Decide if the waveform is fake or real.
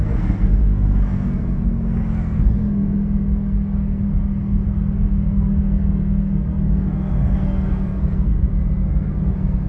fake